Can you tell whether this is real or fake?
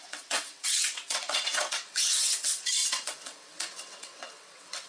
fake